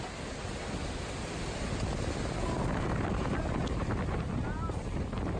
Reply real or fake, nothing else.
real